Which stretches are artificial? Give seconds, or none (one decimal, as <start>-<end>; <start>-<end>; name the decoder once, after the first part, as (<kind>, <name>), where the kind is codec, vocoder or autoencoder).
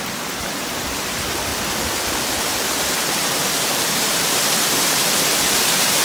0.0-1.5 (vocoder, BigVGAN v2); 2.4-6.0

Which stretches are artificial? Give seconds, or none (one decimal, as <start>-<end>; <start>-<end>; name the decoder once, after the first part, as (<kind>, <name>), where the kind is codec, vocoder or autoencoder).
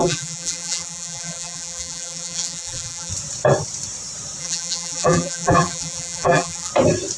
0.0-3.1 (vocoder, BigVGAN v2); 4.4-6.7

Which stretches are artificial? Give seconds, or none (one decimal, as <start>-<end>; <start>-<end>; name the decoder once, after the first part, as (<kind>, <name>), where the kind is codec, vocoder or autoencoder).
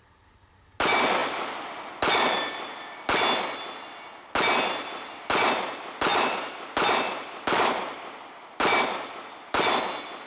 6.1-9.1 (vocoder, BigVGAN v2)